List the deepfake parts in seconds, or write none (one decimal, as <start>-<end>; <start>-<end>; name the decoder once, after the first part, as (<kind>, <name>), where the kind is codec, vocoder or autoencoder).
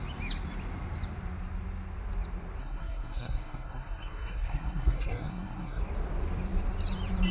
2.6-5.8 (codec, SNAC)